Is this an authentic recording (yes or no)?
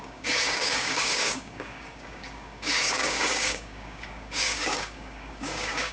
no